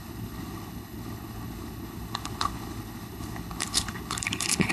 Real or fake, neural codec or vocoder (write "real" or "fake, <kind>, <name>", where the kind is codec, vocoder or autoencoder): fake, codec, HILCodec